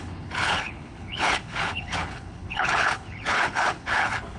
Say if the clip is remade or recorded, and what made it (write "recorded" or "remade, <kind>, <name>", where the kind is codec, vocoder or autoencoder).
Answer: remade, codec, HILCodec